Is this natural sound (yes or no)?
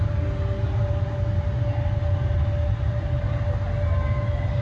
yes